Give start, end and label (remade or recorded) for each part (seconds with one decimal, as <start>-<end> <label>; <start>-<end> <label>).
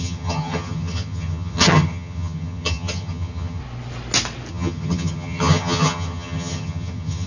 0.0-3.6 remade; 3.6-4.5 recorded; 4.5-7.3 remade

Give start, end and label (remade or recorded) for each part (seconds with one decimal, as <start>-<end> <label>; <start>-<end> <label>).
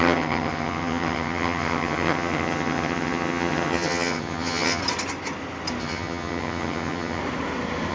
0.0-4.8 remade; 4.8-5.8 recorded; 5.8-7.2 remade; 7.2-7.9 recorded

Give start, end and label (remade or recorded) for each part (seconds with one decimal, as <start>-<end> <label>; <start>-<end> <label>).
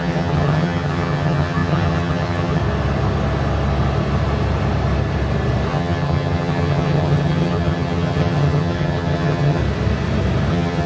0.0-2.6 remade; 2.6-5.7 recorded; 5.7-9.6 remade; 9.6-10.5 recorded; 10.5-10.9 remade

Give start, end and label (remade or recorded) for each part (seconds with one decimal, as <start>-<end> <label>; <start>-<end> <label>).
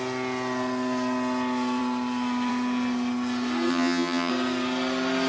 0.0-3.7 recorded; 3.7-4.3 remade; 4.3-5.3 recorded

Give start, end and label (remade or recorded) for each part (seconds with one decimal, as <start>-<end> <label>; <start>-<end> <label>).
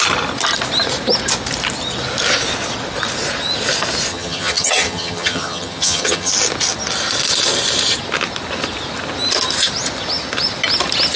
0.0-4.1 recorded; 4.1-6.3 remade; 6.3-11.2 recorded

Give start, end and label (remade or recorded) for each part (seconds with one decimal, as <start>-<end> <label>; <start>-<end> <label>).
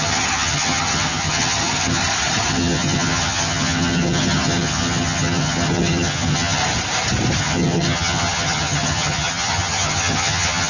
0.0-2.0 remade; 2.0-2.5 recorded; 2.5-6.6 remade; 6.6-7.4 recorded; 7.4-10.7 remade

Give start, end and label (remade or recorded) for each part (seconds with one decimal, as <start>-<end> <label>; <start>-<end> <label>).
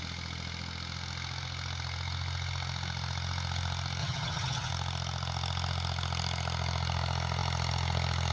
0.0-4.0 recorded; 4.0-4.7 remade; 4.7-8.3 recorded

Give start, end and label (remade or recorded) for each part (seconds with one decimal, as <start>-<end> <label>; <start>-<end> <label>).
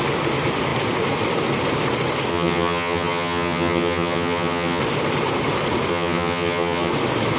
0.0-2.3 recorded; 2.3-4.8 remade; 4.8-5.9 recorded; 5.9-6.9 remade; 6.9-7.4 recorded